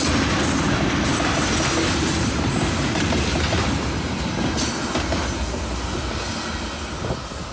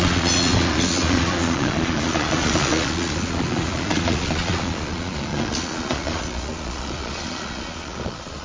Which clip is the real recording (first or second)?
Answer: first